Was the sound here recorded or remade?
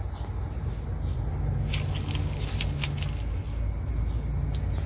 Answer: recorded